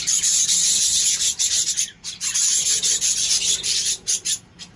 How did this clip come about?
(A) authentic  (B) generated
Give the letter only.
B